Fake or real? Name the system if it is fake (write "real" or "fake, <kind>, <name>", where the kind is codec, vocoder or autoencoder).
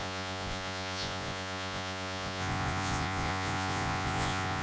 fake, vocoder, Vocos